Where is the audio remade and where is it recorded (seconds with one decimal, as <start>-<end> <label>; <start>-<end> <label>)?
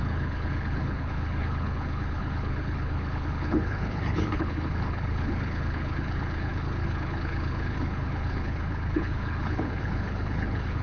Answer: 0.0-10.8 remade